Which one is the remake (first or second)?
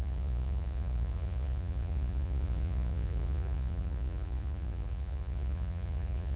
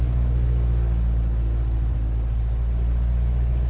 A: first